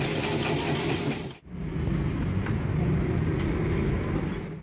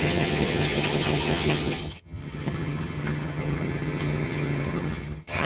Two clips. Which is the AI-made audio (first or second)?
second